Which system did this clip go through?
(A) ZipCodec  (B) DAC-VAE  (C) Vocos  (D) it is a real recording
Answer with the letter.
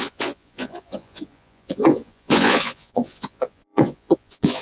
C